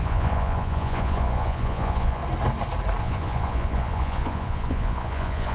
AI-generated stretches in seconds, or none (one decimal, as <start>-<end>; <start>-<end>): 0.0-2.2; 3.0-5.5